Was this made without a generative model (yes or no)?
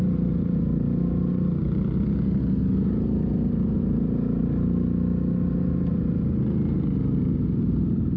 yes